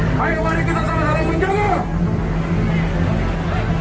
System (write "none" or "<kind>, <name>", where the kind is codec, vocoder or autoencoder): none